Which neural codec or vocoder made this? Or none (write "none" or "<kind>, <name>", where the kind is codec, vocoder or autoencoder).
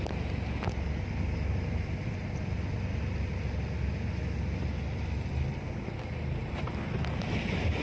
none